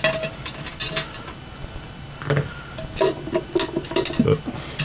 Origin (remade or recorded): recorded